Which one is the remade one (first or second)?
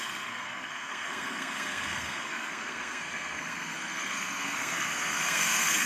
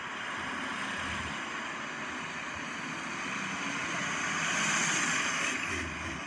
first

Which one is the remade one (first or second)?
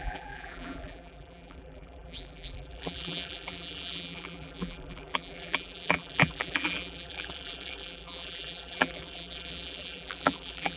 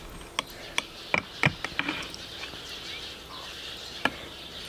first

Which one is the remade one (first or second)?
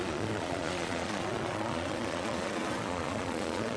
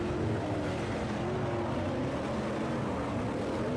first